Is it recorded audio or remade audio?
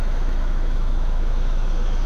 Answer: remade